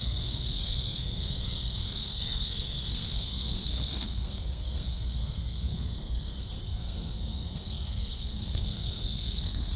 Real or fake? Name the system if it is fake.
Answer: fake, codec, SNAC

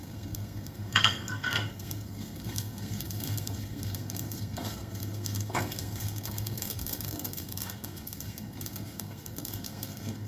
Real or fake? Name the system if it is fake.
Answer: fake, codec, SNAC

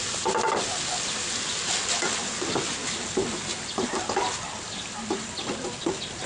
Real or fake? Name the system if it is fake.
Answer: real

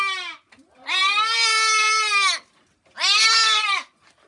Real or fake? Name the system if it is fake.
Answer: real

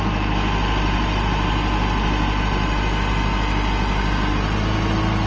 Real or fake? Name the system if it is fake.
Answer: real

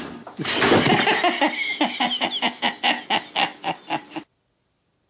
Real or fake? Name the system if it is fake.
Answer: real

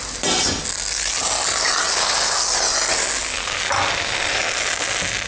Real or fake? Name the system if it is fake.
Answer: real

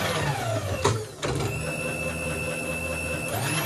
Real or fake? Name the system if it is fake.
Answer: real